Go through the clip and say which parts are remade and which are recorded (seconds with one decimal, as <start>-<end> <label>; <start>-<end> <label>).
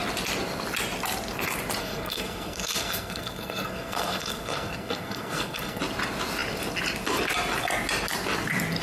0.0-1.8 recorded; 1.8-5.8 remade; 5.8-8.8 recorded